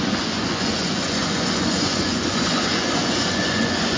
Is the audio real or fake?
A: fake